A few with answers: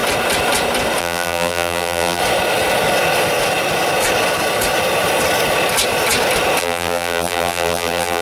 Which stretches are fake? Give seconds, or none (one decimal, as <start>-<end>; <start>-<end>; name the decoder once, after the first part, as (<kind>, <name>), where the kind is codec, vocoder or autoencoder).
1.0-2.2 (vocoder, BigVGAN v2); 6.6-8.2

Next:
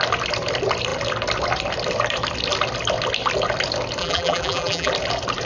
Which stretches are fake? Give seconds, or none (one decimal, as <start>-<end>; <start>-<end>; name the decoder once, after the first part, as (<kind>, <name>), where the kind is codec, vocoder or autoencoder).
4.0-4.9 (vocoder, BigVGAN v2)

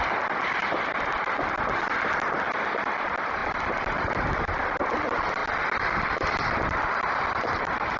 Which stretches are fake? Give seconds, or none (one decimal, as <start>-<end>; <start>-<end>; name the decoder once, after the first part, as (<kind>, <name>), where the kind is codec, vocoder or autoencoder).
0.6-1.3 (vocoder, BigVGAN v2)

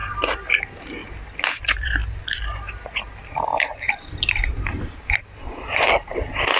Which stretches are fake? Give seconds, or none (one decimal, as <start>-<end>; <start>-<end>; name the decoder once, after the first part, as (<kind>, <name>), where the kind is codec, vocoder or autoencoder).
0.0-1.0 (vocoder, BigVGAN v2); 1.6-6.6